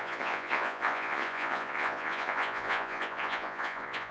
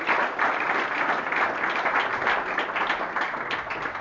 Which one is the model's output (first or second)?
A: first